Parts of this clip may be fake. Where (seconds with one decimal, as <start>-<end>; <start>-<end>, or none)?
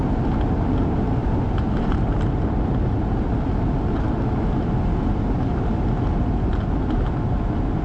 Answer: 1.2-2.1